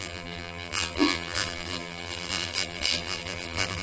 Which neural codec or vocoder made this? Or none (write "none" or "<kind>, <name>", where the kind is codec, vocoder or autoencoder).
vocoder, BigVGAN v2